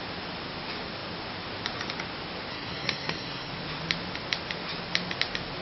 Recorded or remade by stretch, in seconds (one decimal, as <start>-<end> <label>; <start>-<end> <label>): 0.0-2.5 recorded; 2.5-3.5 remade; 3.5-5.6 recorded